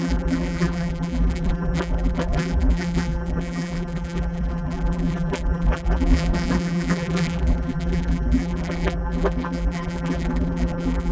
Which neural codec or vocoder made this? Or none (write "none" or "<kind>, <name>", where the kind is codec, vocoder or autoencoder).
vocoder, BigVGAN v2